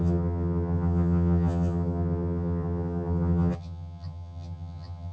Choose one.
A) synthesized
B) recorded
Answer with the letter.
A